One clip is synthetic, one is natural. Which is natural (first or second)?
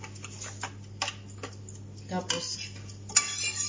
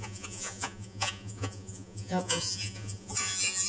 first